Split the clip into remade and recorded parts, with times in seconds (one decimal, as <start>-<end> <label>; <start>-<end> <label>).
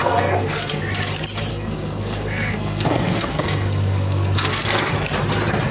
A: 0.0-0.8 remade; 0.8-1.5 recorded; 1.5-4.9 remade; 4.9-5.7 recorded